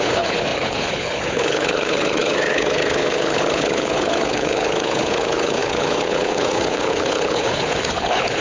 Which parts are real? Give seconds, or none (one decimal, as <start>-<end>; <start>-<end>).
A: none